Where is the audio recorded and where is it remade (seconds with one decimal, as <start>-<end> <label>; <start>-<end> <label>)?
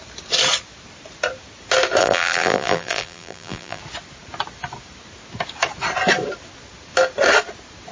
0.0-2.0 recorded; 2.0-3.8 remade; 3.8-7.9 recorded